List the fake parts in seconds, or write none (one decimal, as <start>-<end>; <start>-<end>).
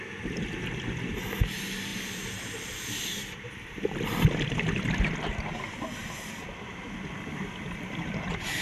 1.9-5.2; 6.0-6.7